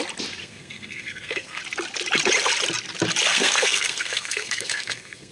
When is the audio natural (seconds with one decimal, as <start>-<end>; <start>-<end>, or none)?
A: 0.0-0.4; 1.6-3.3